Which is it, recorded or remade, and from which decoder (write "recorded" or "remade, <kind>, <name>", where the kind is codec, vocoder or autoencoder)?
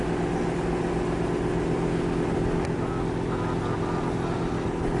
recorded